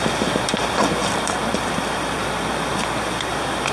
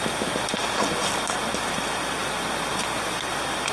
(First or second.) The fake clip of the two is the first